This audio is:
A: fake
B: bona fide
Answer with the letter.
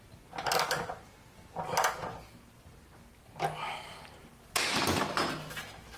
B